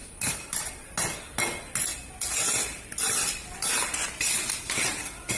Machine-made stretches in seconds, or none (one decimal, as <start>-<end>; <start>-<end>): none